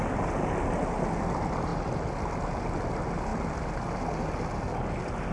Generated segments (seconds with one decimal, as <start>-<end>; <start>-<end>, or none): none